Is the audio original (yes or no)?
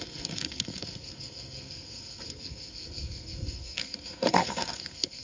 no